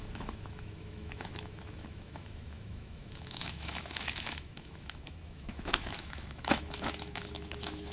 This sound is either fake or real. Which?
fake